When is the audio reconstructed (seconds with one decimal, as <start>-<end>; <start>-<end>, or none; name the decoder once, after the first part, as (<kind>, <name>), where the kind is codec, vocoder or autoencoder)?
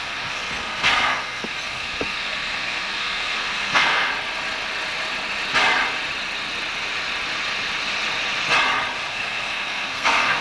0.0-4.1 (codec, SNAC); 9.1-10.4